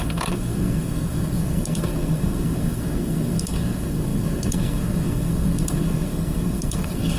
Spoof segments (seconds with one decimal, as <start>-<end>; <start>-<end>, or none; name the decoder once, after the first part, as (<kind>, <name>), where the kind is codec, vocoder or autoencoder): 0.0-7.2 (codec, SNAC)